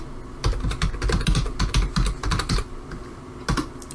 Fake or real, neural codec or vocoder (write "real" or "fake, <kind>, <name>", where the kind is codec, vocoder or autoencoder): real